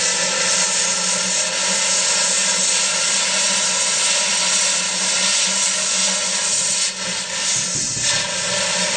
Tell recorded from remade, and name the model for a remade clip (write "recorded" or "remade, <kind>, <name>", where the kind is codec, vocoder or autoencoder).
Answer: recorded